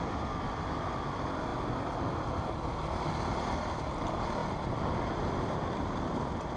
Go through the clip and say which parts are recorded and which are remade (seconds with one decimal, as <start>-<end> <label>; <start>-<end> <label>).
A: 0.0-6.6 recorded